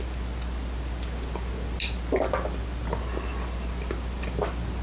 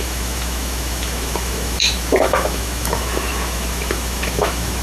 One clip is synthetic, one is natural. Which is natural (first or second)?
first